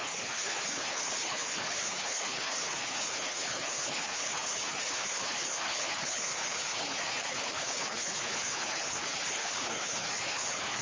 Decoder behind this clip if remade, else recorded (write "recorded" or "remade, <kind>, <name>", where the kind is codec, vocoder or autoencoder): remade, codec, HILCodec